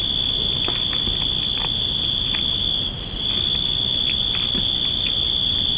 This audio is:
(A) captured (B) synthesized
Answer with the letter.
A